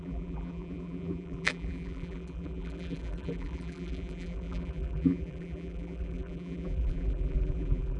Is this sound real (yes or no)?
no